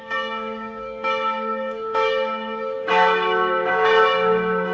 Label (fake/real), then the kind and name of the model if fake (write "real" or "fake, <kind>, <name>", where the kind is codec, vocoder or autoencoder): fake, codec, DAC